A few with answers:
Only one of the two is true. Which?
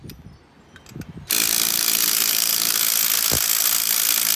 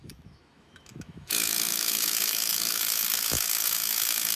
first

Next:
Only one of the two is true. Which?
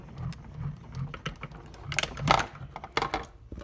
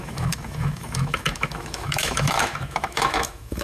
first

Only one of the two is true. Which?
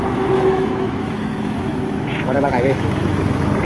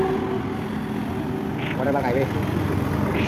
second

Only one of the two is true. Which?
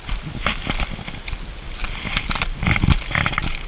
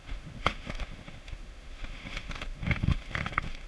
first